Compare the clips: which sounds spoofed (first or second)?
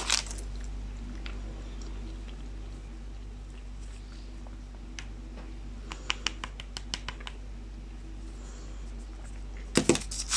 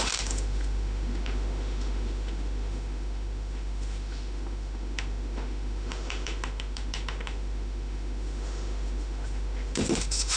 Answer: second